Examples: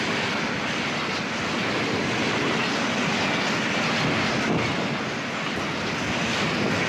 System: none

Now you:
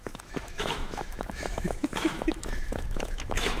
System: autoencoder, DAC-VAE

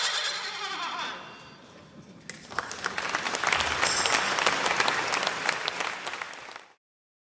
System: none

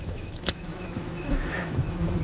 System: autoencoder, DAC-VAE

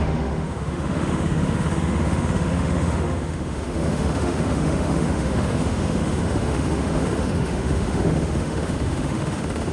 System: autoencoder, DAC-VAE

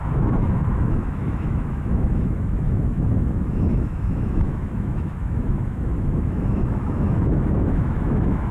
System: autoencoder, DAC-VAE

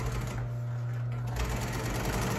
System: none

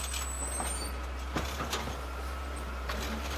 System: none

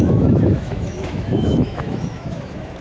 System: autoencoder, DAC-VAE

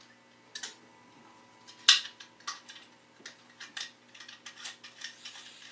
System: none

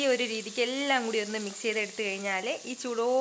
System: none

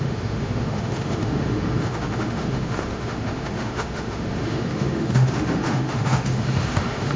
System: autoencoder, DAC-VAE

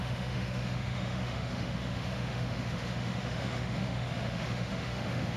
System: autoencoder, DAC-VAE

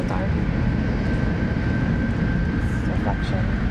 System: none